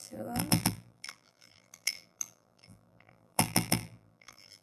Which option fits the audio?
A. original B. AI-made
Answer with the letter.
B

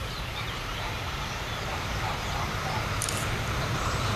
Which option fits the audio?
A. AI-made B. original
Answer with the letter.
A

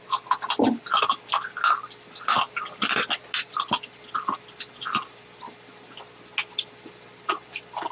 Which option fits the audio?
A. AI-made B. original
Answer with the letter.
B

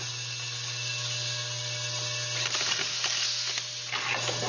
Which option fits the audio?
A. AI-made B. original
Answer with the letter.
B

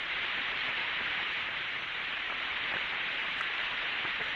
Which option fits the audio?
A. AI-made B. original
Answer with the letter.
A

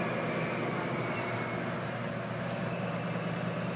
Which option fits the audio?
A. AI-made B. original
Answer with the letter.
B